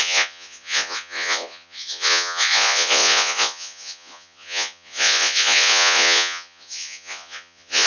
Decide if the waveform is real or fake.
fake